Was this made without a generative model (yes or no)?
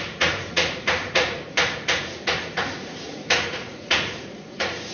no